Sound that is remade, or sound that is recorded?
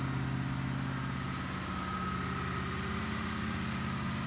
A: recorded